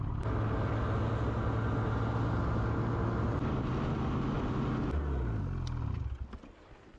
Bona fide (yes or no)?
yes